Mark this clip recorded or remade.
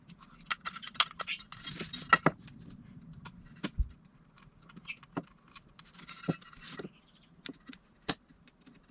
recorded